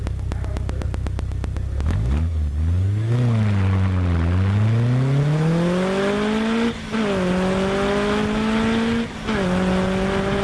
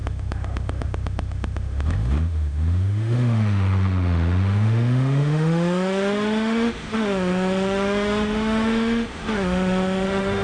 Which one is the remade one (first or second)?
second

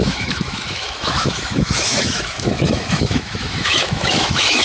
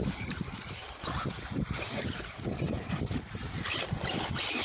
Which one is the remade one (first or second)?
first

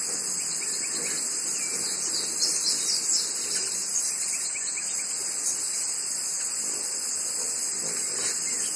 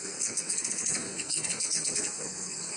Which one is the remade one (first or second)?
second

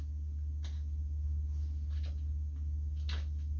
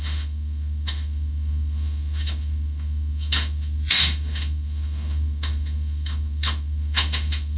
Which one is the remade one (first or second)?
second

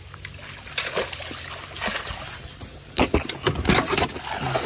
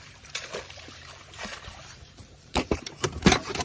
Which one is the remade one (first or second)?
second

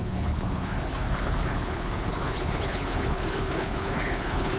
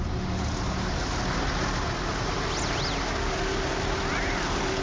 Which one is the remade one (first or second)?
first